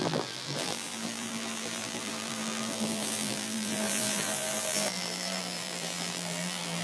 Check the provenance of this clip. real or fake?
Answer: fake